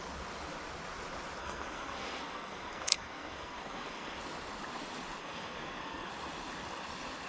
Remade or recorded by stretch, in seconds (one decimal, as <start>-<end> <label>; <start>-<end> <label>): 0.0-1.4 recorded; 1.4-4.2 remade; 4.2-5.2 recorded; 5.2-6.1 remade; 6.1-7.3 recorded

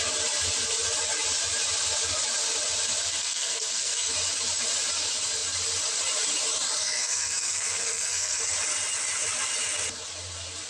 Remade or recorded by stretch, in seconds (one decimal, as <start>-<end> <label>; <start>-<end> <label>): 0.0-3.2 recorded; 3.2-4.1 remade; 4.1-6.8 recorded; 6.8-8.4 remade; 8.4-10.7 recorded

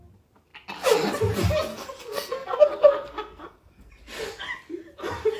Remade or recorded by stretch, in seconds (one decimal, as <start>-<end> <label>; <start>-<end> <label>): 0.0-1.7 recorded; 1.7-3.9 remade; 3.9-5.4 recorded